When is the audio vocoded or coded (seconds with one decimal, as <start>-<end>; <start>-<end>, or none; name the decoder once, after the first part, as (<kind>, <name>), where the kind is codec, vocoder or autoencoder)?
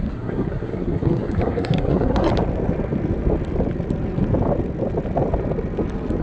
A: 0.0-2.3 (codec, SNAC)